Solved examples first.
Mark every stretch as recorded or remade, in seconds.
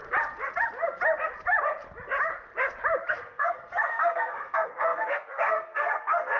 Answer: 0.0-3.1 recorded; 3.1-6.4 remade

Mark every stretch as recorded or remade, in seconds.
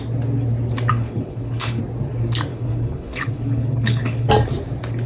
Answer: 0.0-0.9 recorded; 0.9-1.8 remade; 1.8-2.5 recorded; 2.5-4.3 remade; 4.3-5.1 recorded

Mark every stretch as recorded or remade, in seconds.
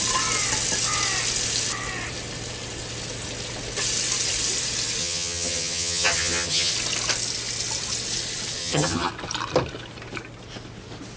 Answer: 0.0-5.0 recorded; 5.0-6.7 remade; 6.7-8.6 recorded; 8.6-9.1 remade; 9.1-11.2 recorded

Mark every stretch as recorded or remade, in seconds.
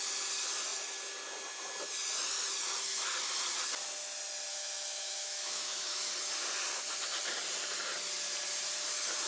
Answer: 0.0-4.5 recorded; 4.5-6.1 remade; 6.1-9.3 recorded